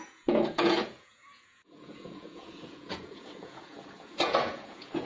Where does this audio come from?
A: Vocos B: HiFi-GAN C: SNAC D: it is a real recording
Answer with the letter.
A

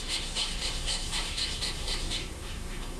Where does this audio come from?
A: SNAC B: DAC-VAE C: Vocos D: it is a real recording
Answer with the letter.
A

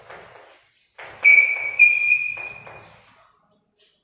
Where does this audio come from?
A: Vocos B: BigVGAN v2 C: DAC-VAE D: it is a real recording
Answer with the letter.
D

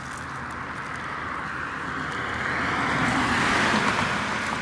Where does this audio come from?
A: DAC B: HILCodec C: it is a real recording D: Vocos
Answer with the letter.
C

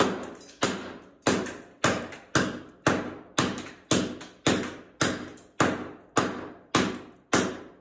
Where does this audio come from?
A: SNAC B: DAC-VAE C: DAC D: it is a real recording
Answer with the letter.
D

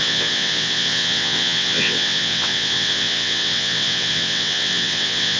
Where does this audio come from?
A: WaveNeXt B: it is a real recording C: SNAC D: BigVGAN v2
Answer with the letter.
A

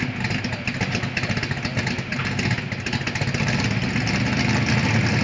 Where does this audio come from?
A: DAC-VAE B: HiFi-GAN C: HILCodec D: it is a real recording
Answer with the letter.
D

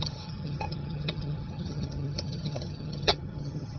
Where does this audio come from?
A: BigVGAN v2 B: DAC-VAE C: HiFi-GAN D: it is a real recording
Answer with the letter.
C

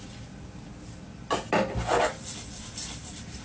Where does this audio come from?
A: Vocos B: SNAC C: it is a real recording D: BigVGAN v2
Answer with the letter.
C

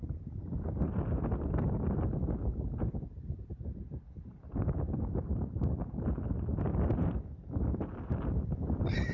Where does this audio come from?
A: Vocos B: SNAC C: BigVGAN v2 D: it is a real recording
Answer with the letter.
C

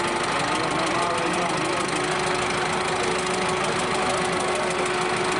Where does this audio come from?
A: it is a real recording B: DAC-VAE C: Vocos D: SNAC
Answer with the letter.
A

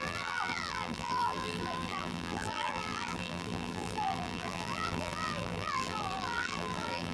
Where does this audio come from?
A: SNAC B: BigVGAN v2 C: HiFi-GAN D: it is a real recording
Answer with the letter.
B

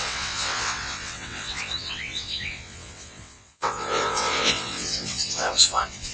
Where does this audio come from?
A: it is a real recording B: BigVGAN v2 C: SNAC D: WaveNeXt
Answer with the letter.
D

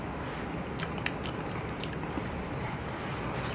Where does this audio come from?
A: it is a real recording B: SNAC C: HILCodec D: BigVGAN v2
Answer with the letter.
A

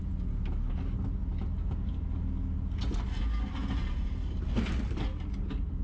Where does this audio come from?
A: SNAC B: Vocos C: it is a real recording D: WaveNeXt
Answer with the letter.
C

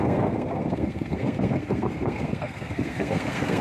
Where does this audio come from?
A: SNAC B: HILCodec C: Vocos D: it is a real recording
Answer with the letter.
A